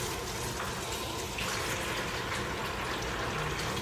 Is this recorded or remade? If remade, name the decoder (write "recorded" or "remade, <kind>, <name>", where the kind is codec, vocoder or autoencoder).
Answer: recorded